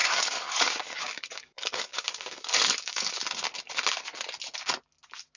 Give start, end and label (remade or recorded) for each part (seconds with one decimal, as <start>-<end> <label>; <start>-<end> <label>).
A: 0.0-3.2 remade; 3.2-5.4 recorded